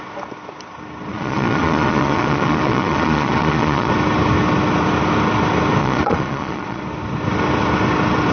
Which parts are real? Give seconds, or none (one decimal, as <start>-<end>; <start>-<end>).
0.0-1.1; 3.9-5.8; 6.8-8.3